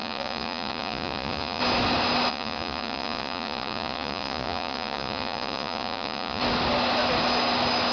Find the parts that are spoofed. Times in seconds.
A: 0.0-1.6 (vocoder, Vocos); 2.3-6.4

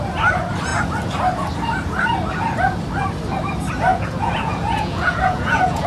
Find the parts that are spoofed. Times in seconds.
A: 3.9-5.9 (vocoder, Vocos)